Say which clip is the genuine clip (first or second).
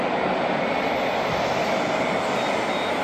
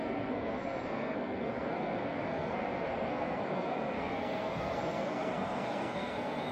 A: first